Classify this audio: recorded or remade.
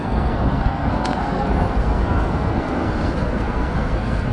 remade